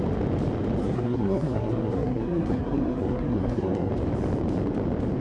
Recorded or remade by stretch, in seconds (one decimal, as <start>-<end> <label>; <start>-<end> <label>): 0.0-0.8 recorded; 0.8-3.9 remade; 3.9-5.2 recorded